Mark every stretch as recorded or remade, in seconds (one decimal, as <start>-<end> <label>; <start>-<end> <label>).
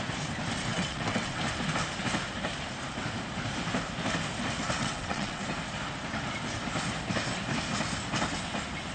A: 0.0-0.7 recorded; 0.7-1.4 remade; 1.4-4.8 recorded; 4.8-5.4 remade; 5.4-8.9 recorded